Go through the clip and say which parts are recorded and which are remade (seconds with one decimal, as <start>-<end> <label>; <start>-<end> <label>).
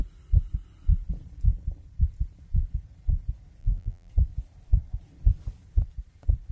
0.0-3.6 recorded; 3.6-4.1 remade; 4.1-6.5 recorded